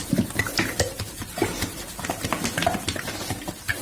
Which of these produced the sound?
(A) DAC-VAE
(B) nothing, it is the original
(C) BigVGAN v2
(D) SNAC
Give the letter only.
B